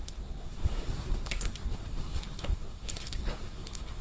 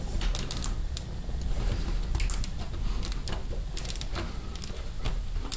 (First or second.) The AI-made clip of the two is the first